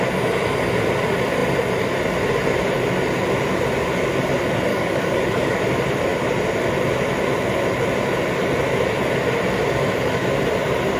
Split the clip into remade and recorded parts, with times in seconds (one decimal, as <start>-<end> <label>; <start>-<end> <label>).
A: 0.0-4.7 recorded; 4.7-5.6 remade; 5.6-11.0 recorded